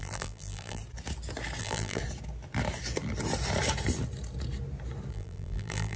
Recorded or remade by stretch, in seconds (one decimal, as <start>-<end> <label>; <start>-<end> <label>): 0.0-0.8 remade; 0.8-1.6 recorded; 1.6-2.0 remade; 2.0-5.1 recorded; 5.1-6.0 remade